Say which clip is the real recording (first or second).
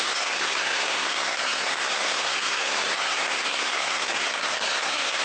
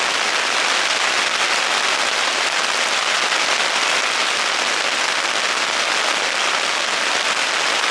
second